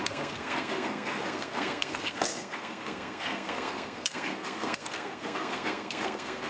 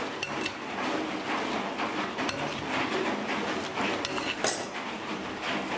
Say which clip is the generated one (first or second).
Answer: first